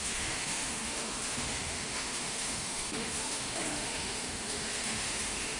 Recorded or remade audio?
remade